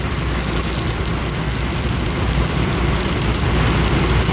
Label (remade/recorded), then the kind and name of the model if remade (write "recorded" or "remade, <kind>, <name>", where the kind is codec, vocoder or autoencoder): remade, vocoder, BigVGAN v2